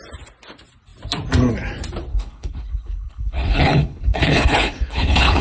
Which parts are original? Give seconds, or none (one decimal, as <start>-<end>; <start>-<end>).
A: 0.0-2.1